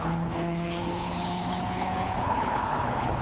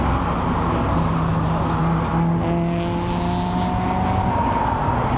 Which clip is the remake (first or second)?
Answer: first